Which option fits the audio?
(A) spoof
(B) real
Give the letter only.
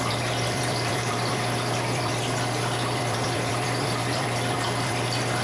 A